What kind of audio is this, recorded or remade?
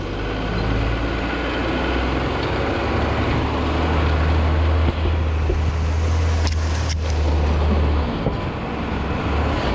recorded